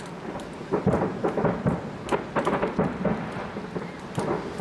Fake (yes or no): no